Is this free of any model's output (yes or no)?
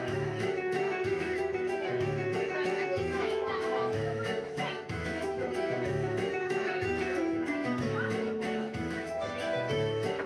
no